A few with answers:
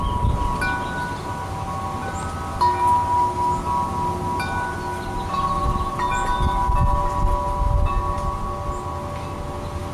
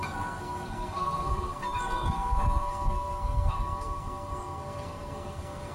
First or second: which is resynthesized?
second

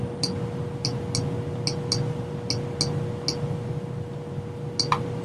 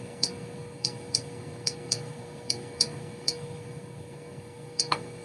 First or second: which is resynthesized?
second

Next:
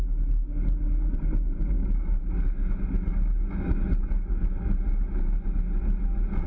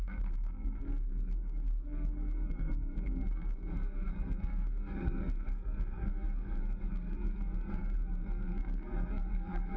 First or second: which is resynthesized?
second